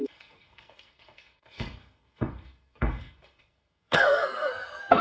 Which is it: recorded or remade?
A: remade